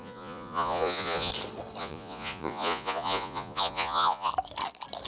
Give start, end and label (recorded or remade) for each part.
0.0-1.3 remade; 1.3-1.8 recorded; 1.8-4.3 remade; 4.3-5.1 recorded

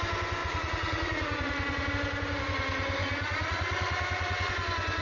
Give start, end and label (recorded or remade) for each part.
0.0-0.4 recorded; 0.4-1.9 remade; 1.9-3.0 recorded; 3.0-4.5 remade; 4.5-5.0 recorded

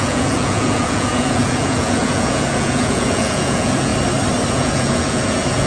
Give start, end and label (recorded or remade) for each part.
0.0-3.9 remade; 3.9-4.5 recorded; 4.5-5.7 remade